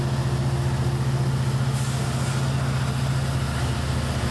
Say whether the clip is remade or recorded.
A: recorded